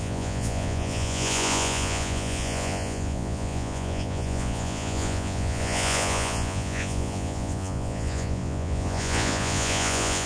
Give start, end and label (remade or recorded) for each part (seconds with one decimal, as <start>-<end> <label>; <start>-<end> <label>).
0.0-10.3 remade